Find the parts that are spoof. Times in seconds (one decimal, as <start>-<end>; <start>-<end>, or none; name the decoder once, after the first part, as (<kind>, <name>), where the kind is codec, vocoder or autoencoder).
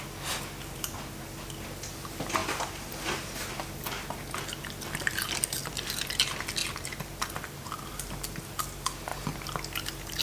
none